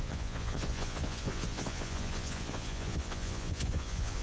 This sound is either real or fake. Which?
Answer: fake